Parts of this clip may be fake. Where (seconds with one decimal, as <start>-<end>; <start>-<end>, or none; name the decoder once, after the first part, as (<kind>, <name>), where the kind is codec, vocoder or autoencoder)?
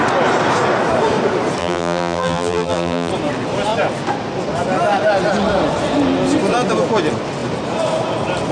1.6-3.1 (vocoder, BigVGAN v2)